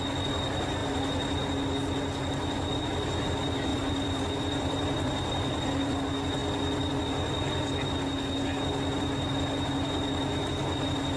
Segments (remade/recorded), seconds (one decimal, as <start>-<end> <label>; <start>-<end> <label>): 0.0-3.7 recorded; 3.7-6.0 remade; 6.0-11.2 recorded